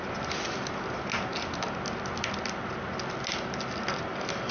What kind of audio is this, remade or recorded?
recorded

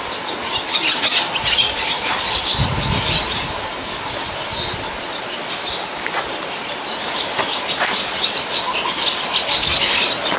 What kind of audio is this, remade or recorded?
recorded